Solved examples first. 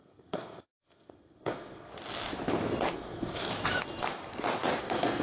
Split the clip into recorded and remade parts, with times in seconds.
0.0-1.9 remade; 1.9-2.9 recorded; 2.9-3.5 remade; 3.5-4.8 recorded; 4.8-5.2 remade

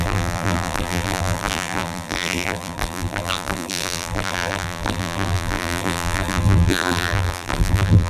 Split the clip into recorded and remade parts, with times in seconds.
0.0-8.1 remade

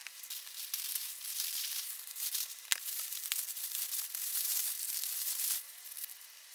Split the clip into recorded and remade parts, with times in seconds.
0.0-6.5 remade

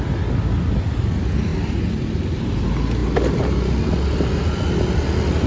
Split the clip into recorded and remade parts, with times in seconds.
0.0-5.5 recorded

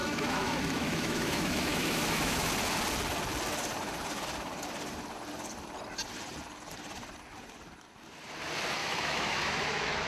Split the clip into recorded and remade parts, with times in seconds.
0.0-2.5 remade; 2.5-8.8 recorded; 8.8-10.1 remade

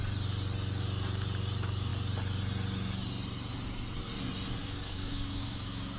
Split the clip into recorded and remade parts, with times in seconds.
0.0-4.6 recorded; 4.6-6.0 remade

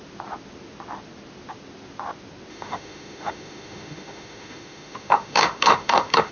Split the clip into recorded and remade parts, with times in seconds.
0.0-2.5 recorded; 2.5-6.3 remade